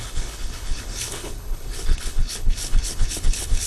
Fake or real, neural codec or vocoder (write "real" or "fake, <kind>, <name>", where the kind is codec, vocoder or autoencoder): fake, codec, HILCodec